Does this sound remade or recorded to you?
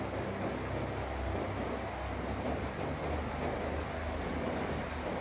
recorded